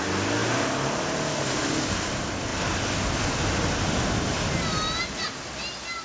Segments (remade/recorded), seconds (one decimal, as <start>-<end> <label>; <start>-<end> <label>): 0.0-6.0 recorded